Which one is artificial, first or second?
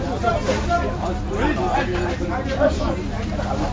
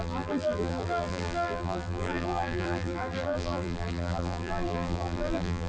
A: second